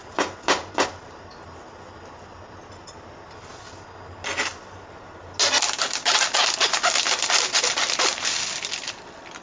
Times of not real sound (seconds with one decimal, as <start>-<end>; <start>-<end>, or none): none